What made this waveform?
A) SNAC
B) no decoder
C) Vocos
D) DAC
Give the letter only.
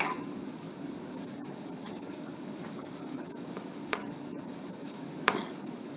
D